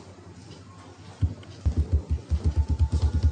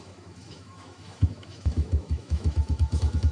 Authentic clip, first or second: first